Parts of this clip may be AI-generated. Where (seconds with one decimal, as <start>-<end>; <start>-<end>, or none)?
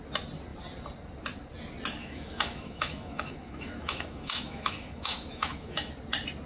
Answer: 2.0-5.9